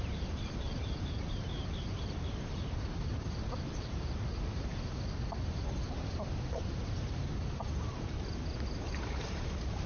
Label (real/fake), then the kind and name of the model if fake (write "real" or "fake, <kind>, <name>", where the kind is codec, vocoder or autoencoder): fake, vocoder, BigVGAN v2